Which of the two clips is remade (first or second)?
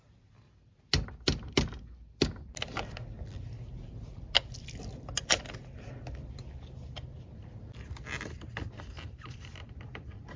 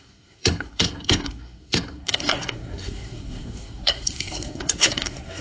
second